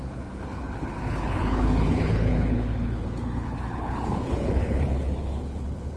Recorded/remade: remade